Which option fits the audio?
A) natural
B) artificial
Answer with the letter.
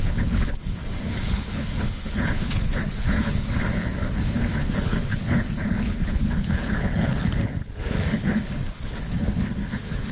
B